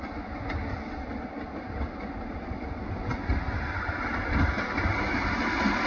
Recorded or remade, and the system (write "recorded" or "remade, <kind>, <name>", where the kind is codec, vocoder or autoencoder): recorded